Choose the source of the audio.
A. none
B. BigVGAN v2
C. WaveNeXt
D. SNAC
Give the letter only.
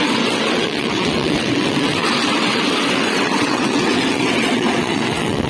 C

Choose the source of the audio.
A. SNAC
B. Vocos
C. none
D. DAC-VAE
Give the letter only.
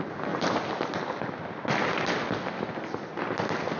C